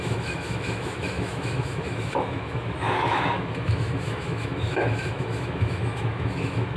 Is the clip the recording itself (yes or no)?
no